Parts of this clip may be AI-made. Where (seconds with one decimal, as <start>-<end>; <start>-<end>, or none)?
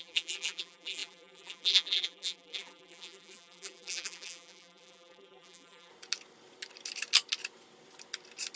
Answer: 0.0-5.9